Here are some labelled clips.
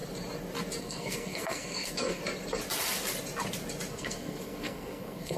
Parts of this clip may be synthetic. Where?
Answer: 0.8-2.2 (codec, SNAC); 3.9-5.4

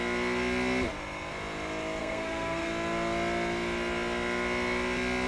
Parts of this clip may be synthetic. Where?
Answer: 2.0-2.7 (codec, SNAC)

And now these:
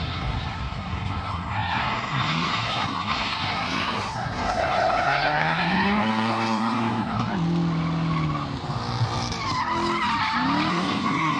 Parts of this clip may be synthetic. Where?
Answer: 0.0-7.3 (codec, SNAC); 10.7-11.4

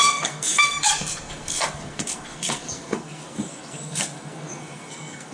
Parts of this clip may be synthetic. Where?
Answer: 0.0-5.3 (codec, SNAC)